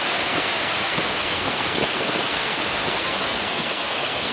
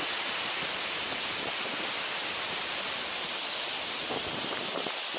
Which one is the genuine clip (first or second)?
second